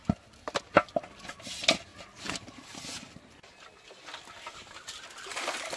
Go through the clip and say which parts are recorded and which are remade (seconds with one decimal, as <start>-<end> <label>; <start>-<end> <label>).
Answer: 0.0-1.0 remade; 1.0-5.8 recorded